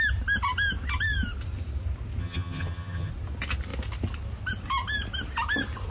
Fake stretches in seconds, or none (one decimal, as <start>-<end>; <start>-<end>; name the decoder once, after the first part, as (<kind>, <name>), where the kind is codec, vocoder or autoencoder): 2.2-3.1 (vocoder, HiFi-GAN)